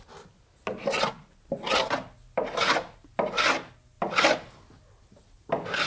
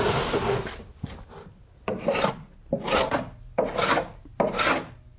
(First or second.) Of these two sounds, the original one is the first